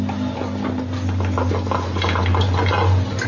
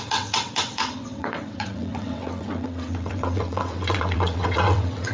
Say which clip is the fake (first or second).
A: second